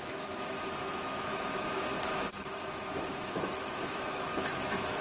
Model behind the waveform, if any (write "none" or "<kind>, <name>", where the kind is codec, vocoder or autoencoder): autoencoder, DAC-VAE